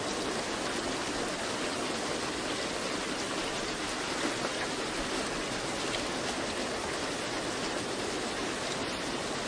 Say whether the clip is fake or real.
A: real